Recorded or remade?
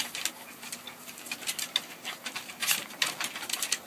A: recorded